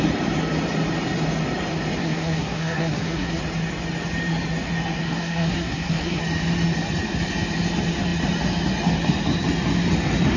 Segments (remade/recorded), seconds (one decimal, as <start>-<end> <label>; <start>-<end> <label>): 0.0-2.0 recorded; 2.0-3.4 remade; 3.4-5.0 recorded; 5.0-6.2 remade; 6.2-10.4 recorded